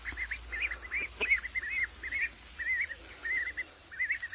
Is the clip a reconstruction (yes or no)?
no